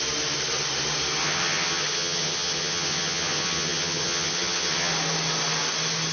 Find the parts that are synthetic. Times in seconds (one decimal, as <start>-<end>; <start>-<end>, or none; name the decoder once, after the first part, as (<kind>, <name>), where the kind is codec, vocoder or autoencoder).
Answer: 1.2-4.9 (vocoder, HiFi-GAN)